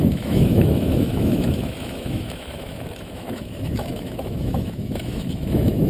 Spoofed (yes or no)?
yes